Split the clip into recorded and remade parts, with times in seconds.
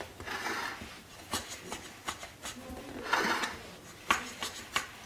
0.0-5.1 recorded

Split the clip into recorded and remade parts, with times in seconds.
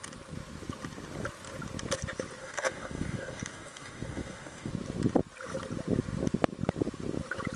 0.0-2.4 recorded; 2.4-4.7 remade; 4.7-7.6 recorded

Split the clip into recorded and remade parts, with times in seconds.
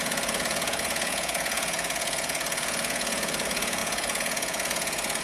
0.0-5.2 remade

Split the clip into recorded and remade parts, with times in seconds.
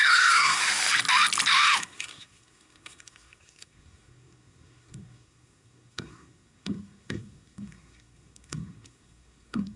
0.0-0.6 remade; 0.6-1.8 recorded; 1.8-9.8 remade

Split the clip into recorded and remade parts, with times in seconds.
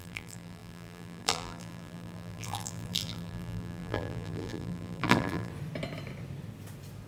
0.0-5.5 remade; 5.5-7.1 recorded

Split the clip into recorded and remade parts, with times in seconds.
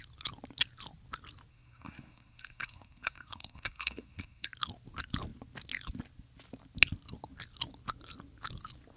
0.0-1.5 recorded; 1.5-4.5 remade; 4.5-9.0 recorded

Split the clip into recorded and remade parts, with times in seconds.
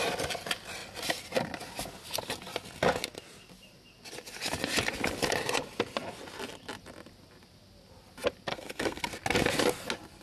0.0-8.5 recorded; 8.5-9.0 remade; 9.0-10.2 recorded